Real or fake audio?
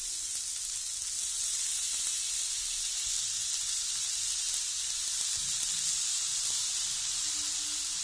real